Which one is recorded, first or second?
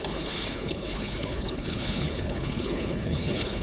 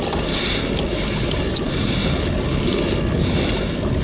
second